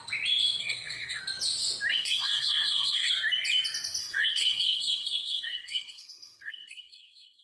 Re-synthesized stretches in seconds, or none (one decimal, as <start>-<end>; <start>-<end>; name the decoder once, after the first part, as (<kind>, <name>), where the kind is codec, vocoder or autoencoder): 0.6-1.2 (codec, SNAC); 1.9-3.1; 4.0-7.4